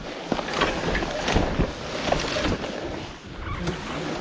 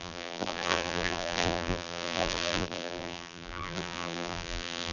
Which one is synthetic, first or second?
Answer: second